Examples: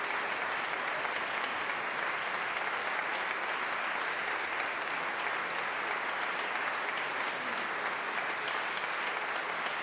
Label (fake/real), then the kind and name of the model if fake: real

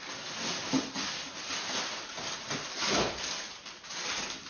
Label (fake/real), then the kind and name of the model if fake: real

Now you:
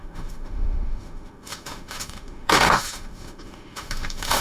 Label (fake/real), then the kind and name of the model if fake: fake, autoencoder, DAC-VAE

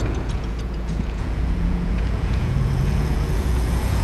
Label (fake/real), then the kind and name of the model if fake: fake, vocoder, Vocos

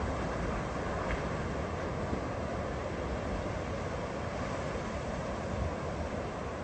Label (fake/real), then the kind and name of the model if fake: real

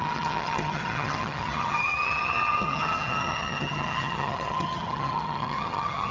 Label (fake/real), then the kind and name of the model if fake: fake, vocoder, HiFi-GAN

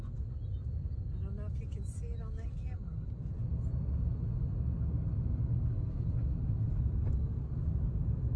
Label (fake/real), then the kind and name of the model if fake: real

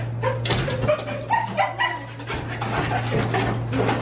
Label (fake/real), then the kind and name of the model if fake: real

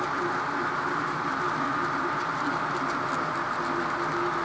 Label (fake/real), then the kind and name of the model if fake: real